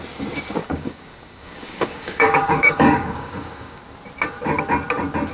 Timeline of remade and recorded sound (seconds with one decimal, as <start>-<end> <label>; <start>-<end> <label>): 0.0-0.6 recorded; 0.6-3.8 remade; 3.8-5.3 recorded